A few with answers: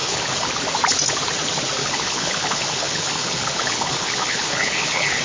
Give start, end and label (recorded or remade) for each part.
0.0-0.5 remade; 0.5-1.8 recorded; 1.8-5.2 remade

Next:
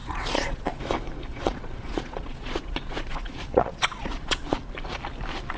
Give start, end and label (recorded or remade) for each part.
0.0-0.8 remade; 0.8-1.3 recorded; 1.3-4.6 remade; 4.6-5.6 recorded

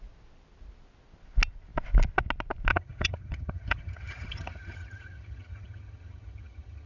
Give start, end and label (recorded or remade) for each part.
0.0-2.7 recorded; 2.7-6.9 remade

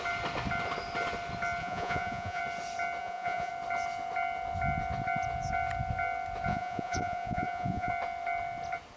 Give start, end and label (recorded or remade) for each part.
0.0-1.6 recorded; 1.6-2.4 remade; 2.4-3.0 recorded; 3.0-3.5 remade; 3.5-6.5 recorded; 6.5-7.9 remade; 7.9-9.0 recorded